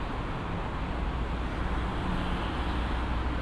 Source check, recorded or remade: recorded